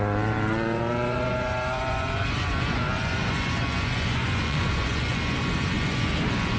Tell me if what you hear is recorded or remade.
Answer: remade